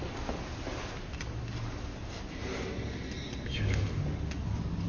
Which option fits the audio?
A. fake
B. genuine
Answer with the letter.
B